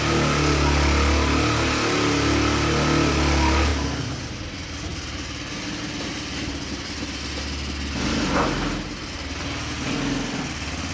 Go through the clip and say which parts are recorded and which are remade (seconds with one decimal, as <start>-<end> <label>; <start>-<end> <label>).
0.0-3.7 recorded; 3.7-4.4 remade; 4.4-10.9 recorded